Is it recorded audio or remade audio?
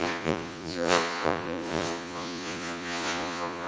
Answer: remade